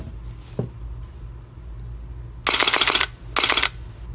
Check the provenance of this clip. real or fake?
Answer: real